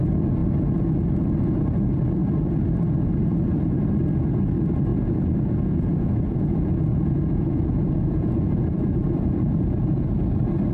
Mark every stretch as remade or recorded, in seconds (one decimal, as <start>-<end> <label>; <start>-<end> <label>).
0.0-4.9 recorded; 4.9-10.1 remade; 10.1-10.7 recorded